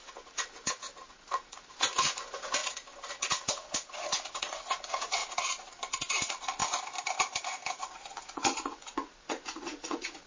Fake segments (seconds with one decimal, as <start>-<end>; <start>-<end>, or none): 0.0-6.6; 7.8-10.3